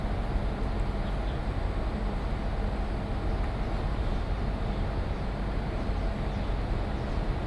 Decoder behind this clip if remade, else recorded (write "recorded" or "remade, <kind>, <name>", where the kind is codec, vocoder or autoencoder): recorded